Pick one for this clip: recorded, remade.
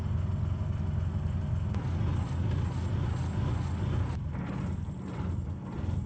recorded